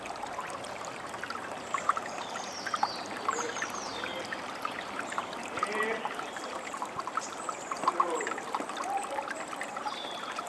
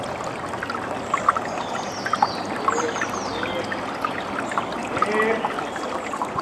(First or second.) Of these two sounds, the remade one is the first